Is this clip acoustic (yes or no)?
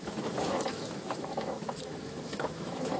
no